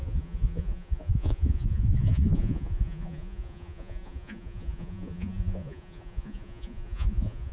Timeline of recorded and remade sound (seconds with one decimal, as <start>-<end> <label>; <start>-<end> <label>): 0.0-7.5 remade